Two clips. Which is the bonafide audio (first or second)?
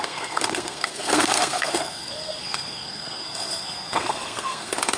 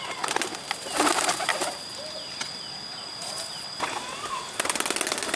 second